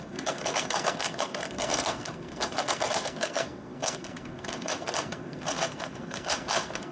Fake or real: fake